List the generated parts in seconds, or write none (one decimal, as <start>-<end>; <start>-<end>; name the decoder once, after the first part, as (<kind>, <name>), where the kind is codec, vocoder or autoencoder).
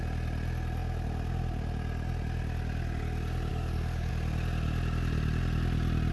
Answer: 3.5-4.1 (codec, DAC)